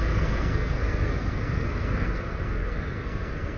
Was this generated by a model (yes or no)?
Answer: yes